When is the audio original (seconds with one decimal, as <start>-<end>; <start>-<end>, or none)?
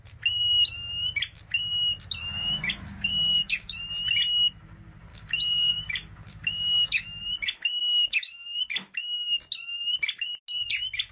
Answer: 0.0-2.2; 3.8-5.1; 7.2-7.8; 8.6-11.1